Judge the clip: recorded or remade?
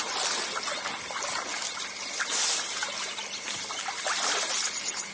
recorded